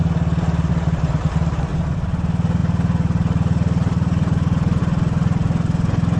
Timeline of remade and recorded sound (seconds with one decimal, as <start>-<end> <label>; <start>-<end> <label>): 0.0-6.2 recorded